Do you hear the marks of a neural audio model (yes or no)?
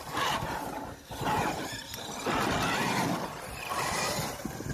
no